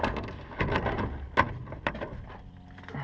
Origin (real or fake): real